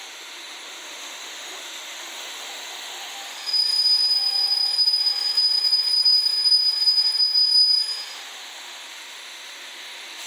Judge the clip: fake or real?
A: fake